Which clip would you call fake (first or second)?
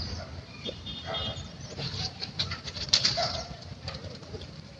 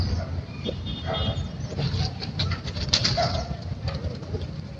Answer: first